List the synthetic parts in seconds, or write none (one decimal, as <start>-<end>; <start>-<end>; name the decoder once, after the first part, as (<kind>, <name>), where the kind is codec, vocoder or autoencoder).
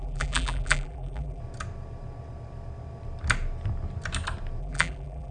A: 0.0-1.4 (vocoder, BigVGAN v2); 4.6-5.3